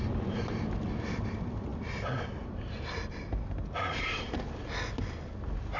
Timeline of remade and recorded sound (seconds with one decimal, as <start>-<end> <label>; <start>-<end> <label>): 0.0-5.8 recorded